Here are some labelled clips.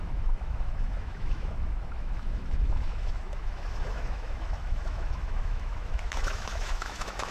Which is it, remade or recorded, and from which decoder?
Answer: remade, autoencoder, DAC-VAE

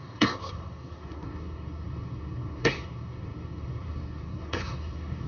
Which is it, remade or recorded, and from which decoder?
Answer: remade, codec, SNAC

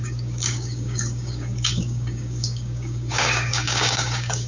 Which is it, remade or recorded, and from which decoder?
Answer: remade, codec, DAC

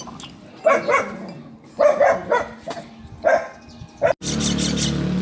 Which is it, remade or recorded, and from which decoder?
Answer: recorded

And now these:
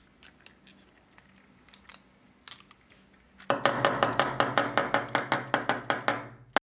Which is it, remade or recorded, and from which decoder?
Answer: recorded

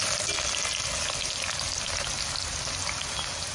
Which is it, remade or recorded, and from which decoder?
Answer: recorded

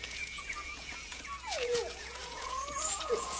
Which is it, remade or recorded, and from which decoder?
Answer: remade, vocoder, Vocos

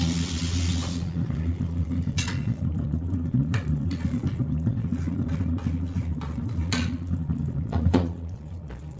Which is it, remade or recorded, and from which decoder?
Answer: remade, vocoder, Vocos